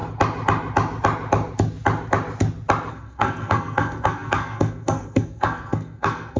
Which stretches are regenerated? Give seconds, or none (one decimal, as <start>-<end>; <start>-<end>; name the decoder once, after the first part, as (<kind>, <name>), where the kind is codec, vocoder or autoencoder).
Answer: 2.9-6.4 (codec, SNAC)